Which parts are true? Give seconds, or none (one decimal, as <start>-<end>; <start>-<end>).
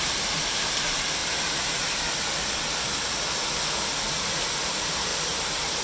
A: 1.2-4.6